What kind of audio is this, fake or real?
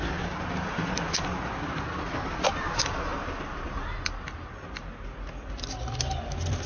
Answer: real